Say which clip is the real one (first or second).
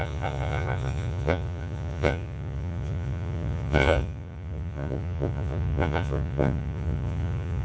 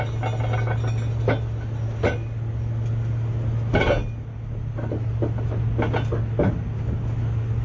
second